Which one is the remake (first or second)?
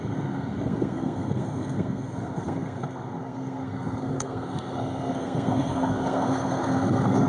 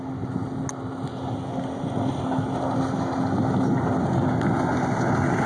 first